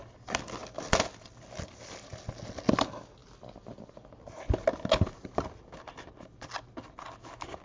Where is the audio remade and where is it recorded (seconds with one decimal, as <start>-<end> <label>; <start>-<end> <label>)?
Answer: 0.0-7.6 recorded